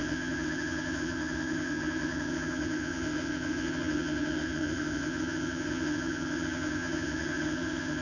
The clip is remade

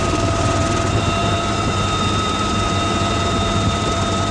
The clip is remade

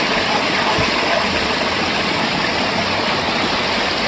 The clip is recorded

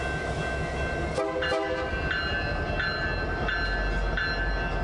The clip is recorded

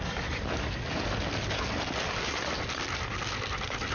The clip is recorded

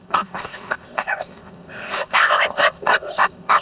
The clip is remade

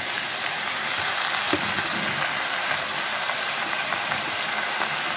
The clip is recorded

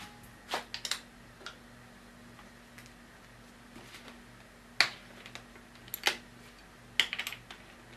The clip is recorded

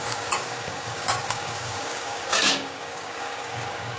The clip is remade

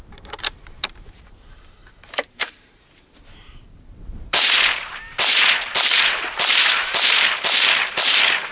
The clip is remade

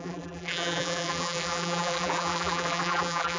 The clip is remade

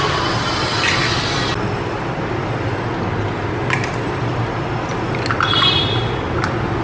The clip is recorded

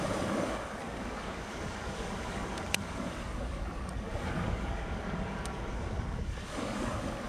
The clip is remade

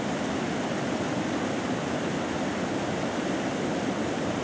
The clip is remade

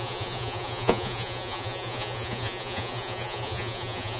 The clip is remade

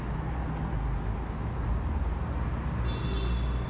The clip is recorded